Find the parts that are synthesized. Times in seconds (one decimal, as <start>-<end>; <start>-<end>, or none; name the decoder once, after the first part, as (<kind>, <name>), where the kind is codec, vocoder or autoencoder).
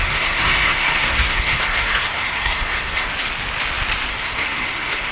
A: 0.0-3.1 (codec, SNAC); 4.1-5.1